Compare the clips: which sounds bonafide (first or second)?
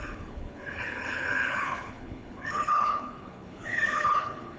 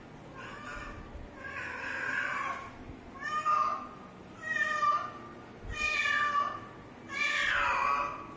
second